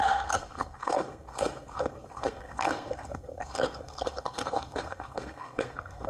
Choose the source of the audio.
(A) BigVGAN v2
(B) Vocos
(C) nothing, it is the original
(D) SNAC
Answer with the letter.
D